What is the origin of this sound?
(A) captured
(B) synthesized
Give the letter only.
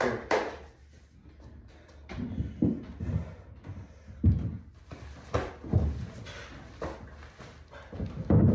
A